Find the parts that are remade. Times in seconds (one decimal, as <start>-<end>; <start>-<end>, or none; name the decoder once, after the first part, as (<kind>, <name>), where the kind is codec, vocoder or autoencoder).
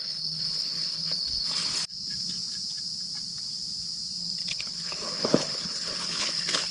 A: 0.0-1.8 (codec, HILCodec); 4.2-6.7